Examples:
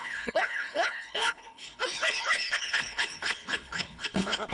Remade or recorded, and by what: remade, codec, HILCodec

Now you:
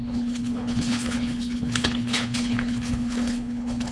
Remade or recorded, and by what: remade, codec, HILCodec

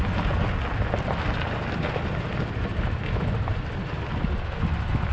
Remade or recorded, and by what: recorded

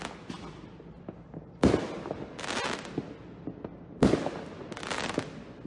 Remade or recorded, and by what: recorded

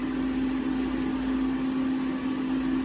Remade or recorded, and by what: recorded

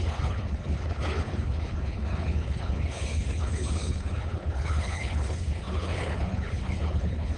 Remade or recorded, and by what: remade, codec, HILCodec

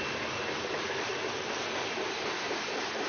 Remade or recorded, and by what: recorded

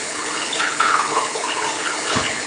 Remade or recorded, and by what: remade, codec, HILCodec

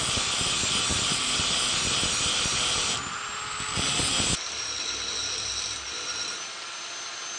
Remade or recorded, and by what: recorded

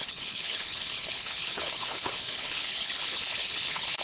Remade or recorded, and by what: remade, codec, HILCodec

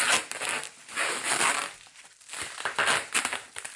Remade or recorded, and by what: recorded